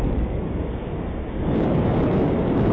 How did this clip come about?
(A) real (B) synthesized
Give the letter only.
B